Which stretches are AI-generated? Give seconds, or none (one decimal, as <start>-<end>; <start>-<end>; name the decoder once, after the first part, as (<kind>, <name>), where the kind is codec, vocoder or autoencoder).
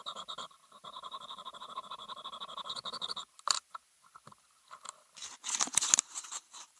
0.0-2.0 (vocoder, BigVGAN v2); 6.1-6.8